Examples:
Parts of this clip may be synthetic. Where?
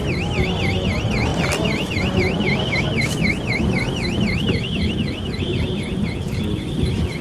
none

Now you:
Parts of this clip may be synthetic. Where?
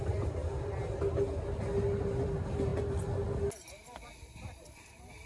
0.0-0.4 (vocoder, BigVGAN v2); 2.2-2.7; 3.7-5.3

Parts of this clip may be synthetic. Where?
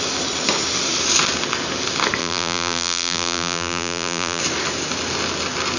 2.2-4.4 (vocoder, BigVGAN v2)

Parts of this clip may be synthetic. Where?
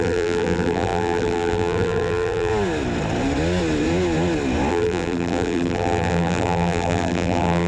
0.0-2.5 (vocoder, BigVGAN v2); 4.7-7.7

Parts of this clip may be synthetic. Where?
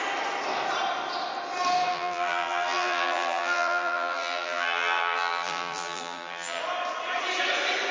1.9-6.6 (vocoder, BigVGAN v2)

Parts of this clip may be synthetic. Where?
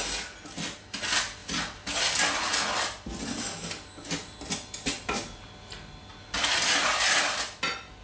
none